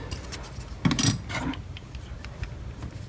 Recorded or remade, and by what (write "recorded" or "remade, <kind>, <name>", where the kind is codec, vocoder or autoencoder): recorded